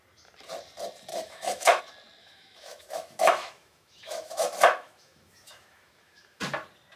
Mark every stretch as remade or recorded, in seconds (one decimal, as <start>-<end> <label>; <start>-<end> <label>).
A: 0.0-1.1 recorded; 1.1-1.8 remade; 1.8-2.2 recorded; 2.2-6.4 remade; 6.4-7.0 recorded